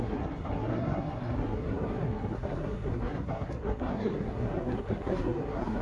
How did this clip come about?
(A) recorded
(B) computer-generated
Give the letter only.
B